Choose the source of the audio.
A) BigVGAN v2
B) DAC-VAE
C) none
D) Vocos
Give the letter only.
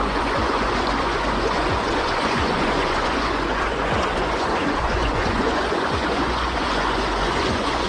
D